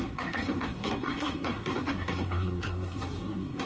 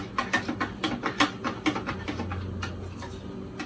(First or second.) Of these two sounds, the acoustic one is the second